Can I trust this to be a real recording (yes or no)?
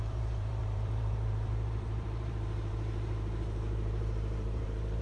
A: no